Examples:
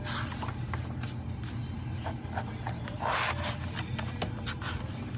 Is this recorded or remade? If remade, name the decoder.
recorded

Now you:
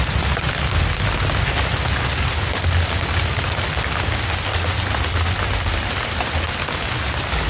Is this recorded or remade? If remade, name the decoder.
recorded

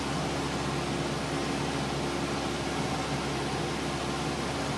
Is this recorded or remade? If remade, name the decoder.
recorded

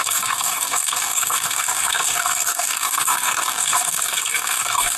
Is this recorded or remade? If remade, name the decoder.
remade, codec, DAC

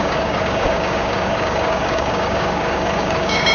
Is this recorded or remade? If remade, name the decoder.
remade, codec, DAC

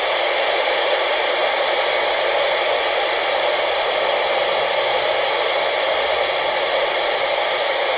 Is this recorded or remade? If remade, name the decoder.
recorded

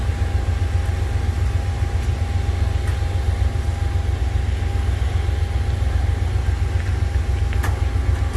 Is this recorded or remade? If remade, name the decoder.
recorded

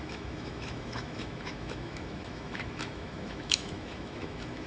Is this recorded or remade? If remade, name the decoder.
remade, autoencoder, DAC-VAE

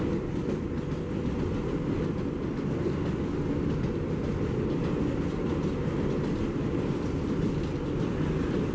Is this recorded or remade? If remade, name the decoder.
recorded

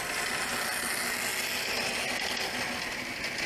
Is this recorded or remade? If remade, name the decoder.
recorded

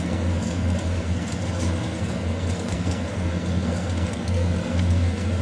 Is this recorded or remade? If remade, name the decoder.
remade, codec, SNAC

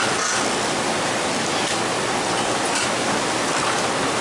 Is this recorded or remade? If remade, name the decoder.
recorded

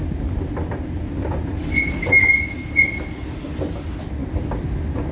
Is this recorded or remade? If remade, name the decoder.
recorded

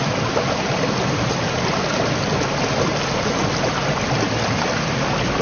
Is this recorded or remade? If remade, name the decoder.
recorded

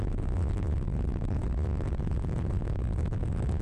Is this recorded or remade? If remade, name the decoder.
remade, autoencoder, DAC-VAE